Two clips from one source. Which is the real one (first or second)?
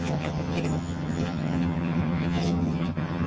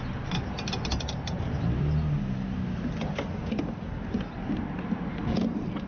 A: second